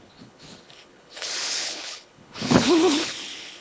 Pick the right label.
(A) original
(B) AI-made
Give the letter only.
B